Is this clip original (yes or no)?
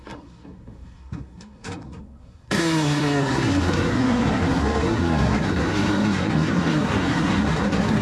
no